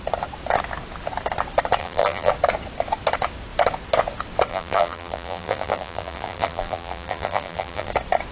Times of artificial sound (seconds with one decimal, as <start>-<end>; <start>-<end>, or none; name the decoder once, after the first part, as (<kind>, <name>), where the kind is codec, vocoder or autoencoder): 1.8-2.3 (vocoder, BigVGAN v2); 4.5-7.9